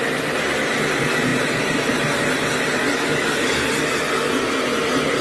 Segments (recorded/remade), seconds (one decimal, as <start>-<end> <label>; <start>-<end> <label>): 0.0-5.2 recorded